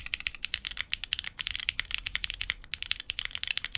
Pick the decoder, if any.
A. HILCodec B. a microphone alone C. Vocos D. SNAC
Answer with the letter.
B